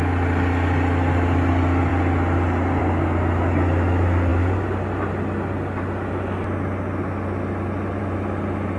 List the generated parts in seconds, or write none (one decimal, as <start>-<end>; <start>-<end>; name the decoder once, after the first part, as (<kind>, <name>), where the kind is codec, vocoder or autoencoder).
none